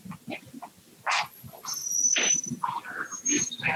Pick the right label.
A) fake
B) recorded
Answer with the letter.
B